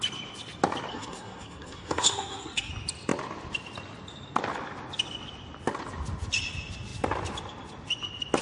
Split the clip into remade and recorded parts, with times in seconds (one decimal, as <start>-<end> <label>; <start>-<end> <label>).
0.0-0.9 recorded; 0.9-2.7 remade; 2.7-8.4 recorded